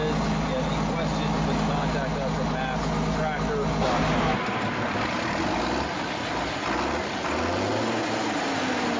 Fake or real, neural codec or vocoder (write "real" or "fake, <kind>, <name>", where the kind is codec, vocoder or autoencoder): real